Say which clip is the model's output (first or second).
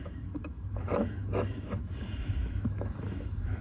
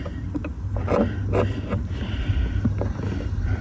first